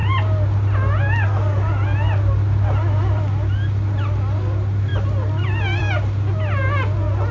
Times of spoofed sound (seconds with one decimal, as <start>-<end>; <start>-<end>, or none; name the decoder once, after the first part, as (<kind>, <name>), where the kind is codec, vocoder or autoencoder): none